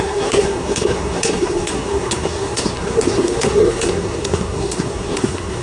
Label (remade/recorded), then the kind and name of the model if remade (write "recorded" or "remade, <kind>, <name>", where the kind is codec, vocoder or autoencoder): remade, codec, SNAC